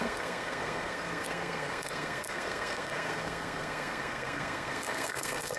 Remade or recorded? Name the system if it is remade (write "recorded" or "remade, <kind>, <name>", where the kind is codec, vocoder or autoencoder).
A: remade, codec, SNAC